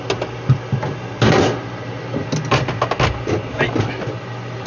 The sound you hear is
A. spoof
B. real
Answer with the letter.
B